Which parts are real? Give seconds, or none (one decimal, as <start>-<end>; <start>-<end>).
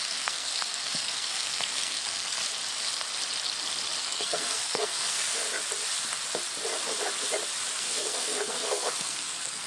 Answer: 2.4-4.0; 5.4-7.8